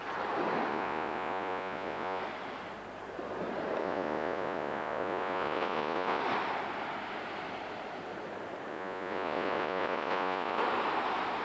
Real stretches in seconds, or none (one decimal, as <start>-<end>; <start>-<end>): 0.0-0.7; 2.2-3.8; 6.2-8.7; 10.6-11.4

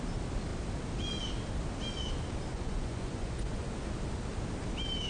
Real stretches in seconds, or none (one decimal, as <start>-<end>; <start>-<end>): 0.0-2.5; 3.7-5.1

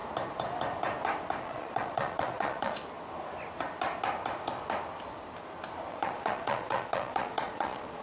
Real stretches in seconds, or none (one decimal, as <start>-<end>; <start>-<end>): 0.0-1.4; 2.8-5.9